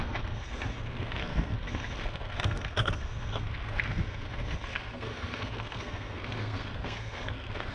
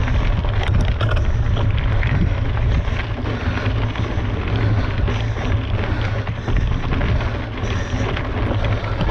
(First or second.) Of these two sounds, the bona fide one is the second